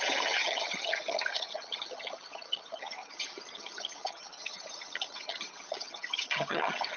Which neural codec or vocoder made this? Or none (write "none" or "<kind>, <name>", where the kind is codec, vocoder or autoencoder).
vocoder, HiFi-GAN